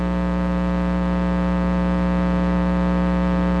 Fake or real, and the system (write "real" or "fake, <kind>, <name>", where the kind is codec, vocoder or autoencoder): real